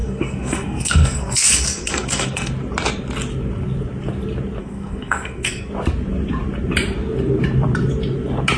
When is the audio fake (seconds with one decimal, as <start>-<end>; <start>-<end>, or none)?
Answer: 0.0-2.5; 4.6-5.7